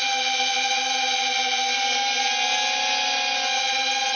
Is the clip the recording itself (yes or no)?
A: yes